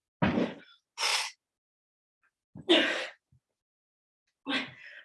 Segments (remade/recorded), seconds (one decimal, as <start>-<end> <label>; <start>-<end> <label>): 0.0-5.0 recorded